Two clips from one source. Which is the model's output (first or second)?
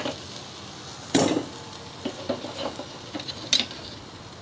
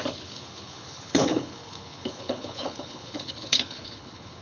second